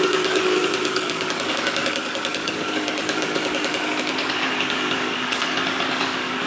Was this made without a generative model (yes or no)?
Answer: no